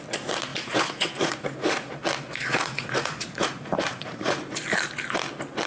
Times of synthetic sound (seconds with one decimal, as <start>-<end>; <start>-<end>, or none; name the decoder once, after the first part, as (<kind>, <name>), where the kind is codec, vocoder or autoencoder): 0.5-1.9 (vocoder, Vocos); 2.5-4.5